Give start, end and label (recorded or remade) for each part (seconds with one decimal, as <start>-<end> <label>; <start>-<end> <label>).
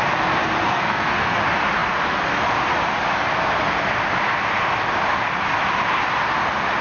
0.0-0.6 recorded; 0.6-1.4 remade; 1.4-6.8 recorded